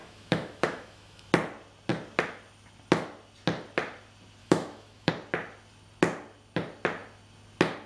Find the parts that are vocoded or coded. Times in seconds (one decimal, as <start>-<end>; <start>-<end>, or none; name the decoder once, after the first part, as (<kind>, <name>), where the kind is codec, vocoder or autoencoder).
0.0-1.3 (autoencoder, DAC-VAE); 4.4-5.1